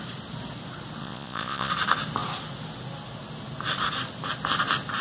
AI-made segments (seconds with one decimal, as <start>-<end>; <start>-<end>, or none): 1.0-1.7